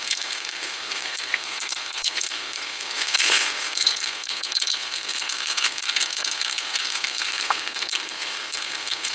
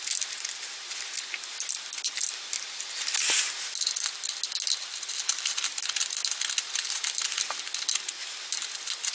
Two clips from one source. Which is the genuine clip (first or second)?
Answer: second